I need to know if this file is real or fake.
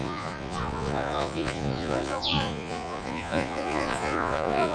fake